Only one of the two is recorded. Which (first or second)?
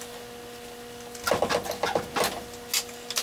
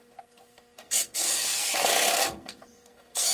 first